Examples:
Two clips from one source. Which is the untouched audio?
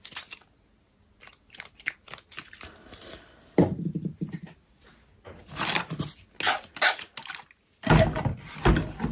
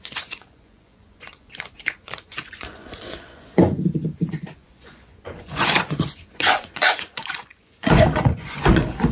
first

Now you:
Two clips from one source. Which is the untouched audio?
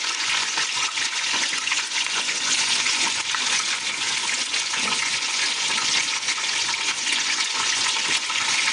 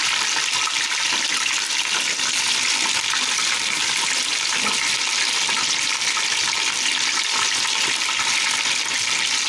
second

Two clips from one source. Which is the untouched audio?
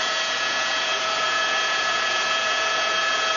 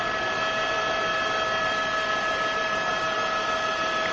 second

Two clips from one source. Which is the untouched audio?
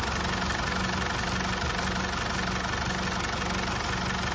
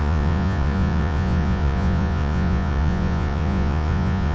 first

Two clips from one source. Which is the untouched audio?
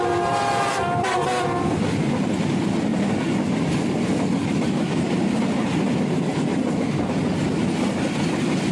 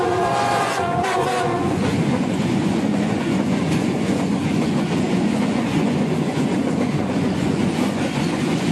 first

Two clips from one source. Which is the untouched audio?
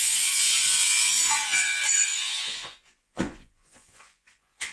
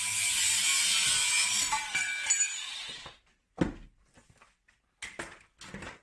second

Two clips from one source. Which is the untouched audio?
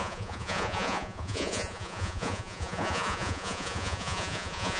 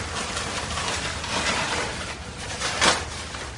second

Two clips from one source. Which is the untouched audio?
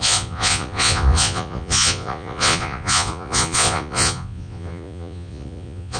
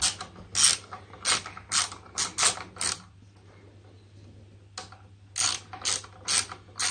second